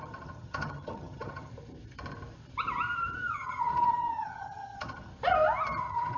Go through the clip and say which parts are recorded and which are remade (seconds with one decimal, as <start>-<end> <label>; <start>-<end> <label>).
0.0-1.5 remade; 1.5-3.3 recorded; 3.3-5.1 remade; 5.1-5.8 recorded; 5.8-6.2 remade